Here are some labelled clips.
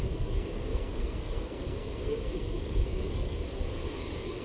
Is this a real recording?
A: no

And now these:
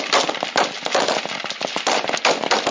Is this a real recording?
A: yes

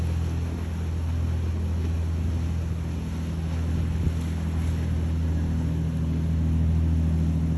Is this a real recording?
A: yes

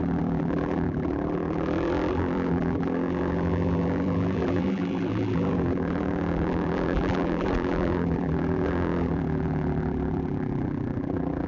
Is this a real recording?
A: no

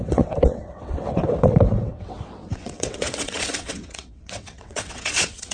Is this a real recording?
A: no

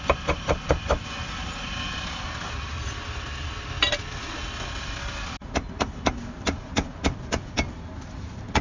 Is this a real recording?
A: yes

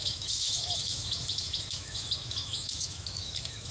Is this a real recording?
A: no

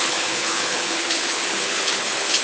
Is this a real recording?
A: no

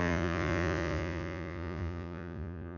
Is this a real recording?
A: no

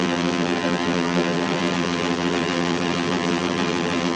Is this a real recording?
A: no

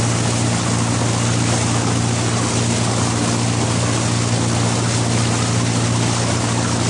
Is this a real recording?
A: yes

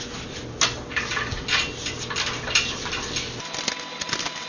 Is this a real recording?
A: yes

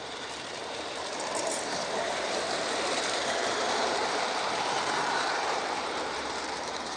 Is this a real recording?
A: no